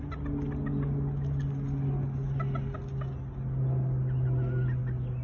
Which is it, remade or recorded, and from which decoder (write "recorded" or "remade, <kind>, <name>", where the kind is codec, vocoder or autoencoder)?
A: recorded